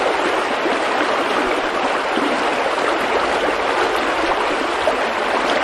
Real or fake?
real